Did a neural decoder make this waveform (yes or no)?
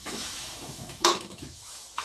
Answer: yes